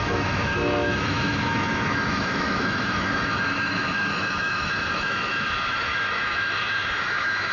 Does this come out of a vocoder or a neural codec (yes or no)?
yes